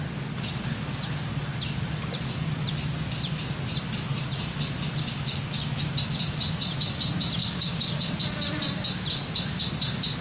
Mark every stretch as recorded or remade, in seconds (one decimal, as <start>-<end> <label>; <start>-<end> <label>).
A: 0.0-5.0 recorded; 5.0-5.9 remade; 5.9-7.4 recorded; 7.4-8.1 remade; 8.1-10.2 recorded